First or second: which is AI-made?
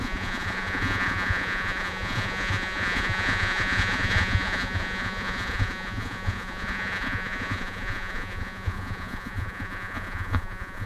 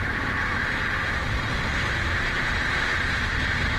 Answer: first